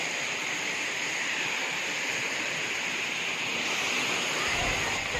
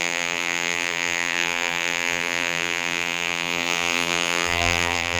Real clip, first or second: first